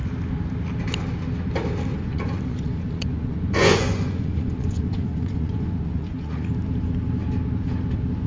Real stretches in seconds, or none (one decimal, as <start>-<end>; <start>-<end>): 0.0-1.9; 6.4-8.3